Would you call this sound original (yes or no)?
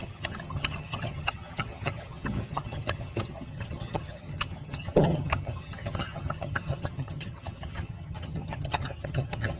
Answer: no